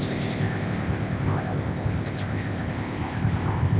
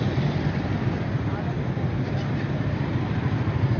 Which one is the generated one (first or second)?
first